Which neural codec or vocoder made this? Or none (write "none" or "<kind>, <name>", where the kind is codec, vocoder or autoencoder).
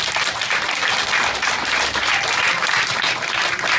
none